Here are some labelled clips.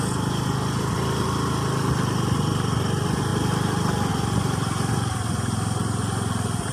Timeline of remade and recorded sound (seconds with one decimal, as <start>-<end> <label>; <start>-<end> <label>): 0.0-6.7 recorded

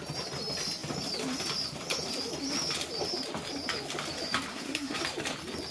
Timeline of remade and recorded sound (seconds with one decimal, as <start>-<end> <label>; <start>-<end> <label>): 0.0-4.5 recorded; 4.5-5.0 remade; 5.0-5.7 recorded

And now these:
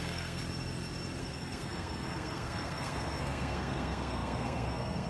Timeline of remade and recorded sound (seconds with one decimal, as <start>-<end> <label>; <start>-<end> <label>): 0.0-0.4 remade; 0.4-1.2 recorded; 1.2-5.1 remade